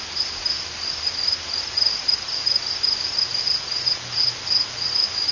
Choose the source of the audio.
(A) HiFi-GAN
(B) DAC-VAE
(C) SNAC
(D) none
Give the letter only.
D